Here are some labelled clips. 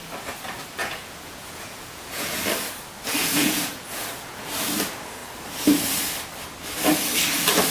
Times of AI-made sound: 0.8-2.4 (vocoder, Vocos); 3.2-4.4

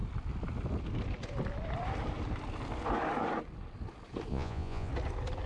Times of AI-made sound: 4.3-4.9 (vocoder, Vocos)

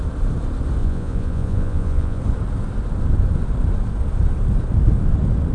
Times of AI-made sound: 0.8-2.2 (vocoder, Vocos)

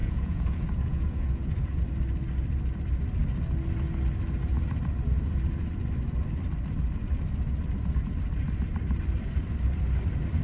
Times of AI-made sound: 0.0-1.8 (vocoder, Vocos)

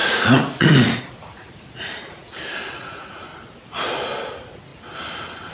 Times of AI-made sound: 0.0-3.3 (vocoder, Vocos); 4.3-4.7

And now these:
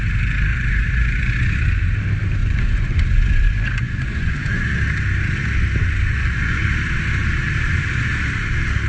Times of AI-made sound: 0.5-1.8 (vocoder, Vocos); 2.4-4.6; 5.8-6.6

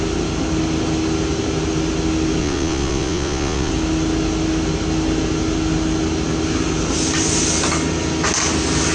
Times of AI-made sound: 2.4-3.7 (vocoder, Vocos)

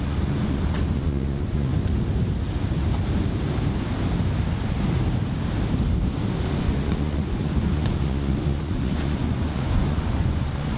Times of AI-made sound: 0.0-1.7 (vocoder, Vocos); 6.6-10.8